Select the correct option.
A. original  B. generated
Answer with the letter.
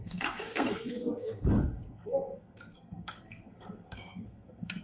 B